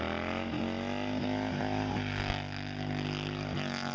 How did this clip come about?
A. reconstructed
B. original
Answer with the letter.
B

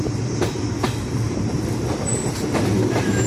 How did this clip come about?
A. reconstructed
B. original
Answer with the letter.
B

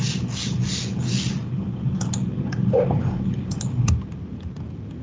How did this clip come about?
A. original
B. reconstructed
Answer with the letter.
A